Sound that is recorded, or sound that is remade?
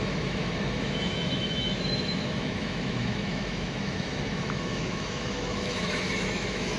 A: remade